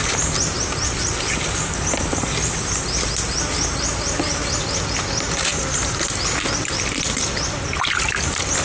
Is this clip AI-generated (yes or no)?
no